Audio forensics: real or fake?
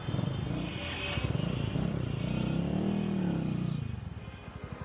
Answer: real